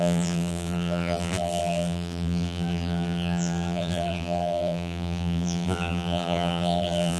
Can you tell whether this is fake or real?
fake